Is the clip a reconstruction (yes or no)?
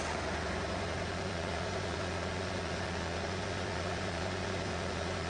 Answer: yes